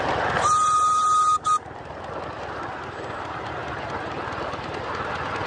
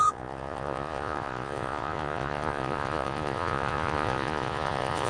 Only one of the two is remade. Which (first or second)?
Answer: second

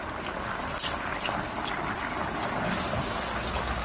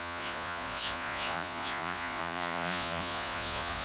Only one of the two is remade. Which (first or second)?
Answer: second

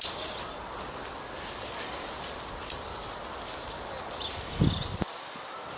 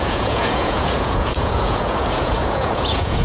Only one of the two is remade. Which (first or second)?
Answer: second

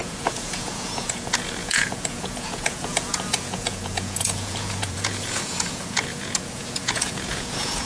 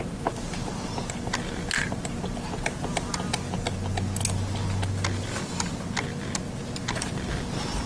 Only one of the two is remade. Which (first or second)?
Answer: first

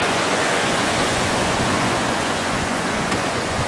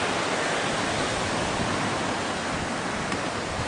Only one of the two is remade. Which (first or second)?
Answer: first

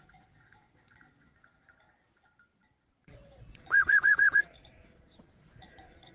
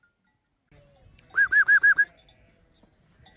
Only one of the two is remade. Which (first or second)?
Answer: first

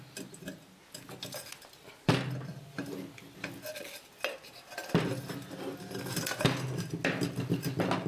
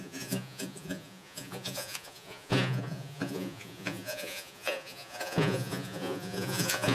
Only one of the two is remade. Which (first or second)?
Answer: second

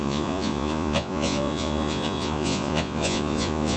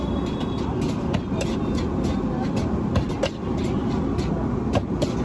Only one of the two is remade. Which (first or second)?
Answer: first